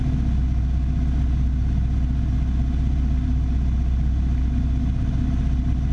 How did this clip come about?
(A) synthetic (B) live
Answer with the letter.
B